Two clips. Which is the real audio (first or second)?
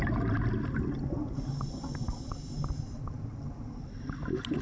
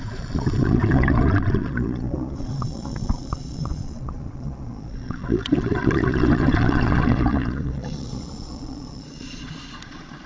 first